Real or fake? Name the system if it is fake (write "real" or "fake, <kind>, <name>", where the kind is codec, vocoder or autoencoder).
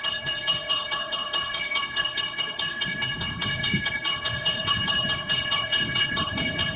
fake, codec, HILCodec